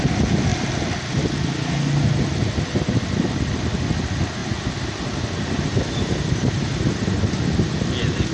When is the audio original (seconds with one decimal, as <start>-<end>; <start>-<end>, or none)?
0.0-8.3